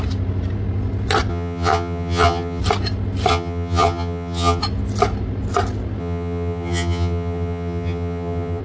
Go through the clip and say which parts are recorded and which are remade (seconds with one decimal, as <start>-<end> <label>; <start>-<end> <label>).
0.0-1.3 recorded; 1.3-2.6 remade; 2.6-3.3 recorded; 3.3-4.6 remade; 4.6-6.0 recorded; 6.0-8.6 remade